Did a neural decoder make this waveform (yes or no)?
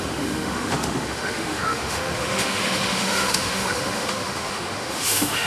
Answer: yes